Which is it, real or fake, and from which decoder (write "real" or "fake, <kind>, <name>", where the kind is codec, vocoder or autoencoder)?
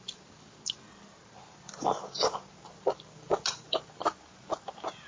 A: real